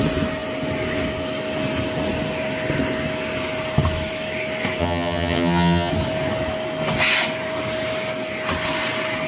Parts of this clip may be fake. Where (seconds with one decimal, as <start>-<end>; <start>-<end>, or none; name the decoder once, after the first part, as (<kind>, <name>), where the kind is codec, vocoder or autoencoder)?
4.8-5.9 (vocoder, HiFi-GAN)